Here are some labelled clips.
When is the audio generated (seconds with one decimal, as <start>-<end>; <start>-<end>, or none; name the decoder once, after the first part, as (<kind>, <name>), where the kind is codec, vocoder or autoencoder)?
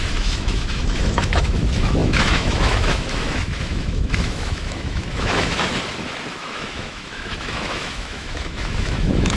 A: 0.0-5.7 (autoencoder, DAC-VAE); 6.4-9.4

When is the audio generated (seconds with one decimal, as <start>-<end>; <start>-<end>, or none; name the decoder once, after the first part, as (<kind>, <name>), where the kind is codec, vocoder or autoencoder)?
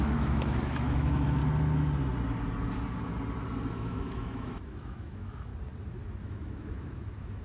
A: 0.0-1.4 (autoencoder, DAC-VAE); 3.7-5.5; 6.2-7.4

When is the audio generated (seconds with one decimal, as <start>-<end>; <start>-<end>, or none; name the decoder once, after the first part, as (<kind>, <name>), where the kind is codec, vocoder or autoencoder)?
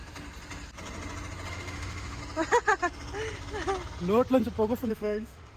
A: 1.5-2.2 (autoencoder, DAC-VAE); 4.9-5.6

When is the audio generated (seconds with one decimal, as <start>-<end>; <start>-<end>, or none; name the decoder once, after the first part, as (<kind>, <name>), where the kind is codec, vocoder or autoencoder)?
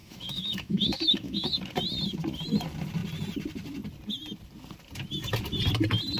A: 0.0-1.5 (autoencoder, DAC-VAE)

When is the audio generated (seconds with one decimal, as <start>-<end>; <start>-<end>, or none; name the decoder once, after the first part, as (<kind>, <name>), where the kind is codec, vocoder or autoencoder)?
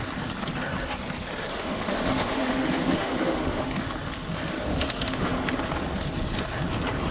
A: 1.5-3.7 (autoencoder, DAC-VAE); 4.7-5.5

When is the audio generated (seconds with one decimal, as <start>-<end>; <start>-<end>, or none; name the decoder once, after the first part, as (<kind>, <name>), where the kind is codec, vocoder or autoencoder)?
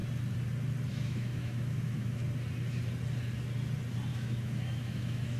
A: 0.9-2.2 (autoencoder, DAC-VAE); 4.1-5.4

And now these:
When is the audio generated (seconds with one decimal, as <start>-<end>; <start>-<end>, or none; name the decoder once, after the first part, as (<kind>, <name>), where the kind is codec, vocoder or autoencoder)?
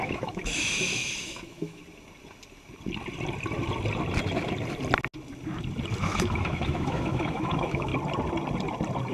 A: 0.0-1.8 (autoencoder, DAC-VAE); 6.0-7.9